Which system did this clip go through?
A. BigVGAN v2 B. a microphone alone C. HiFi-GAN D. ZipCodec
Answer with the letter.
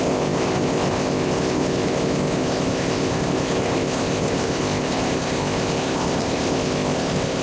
D